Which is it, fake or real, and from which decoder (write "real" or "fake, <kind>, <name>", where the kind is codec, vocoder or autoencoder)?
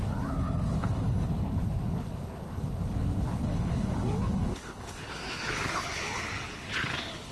fake, codec, HILCodec